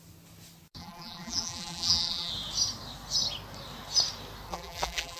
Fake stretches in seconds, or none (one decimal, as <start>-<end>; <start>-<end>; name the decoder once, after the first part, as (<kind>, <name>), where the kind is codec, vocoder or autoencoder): 0.8-2.3 (vocoder, BigVGAN v2); 4.5-5.2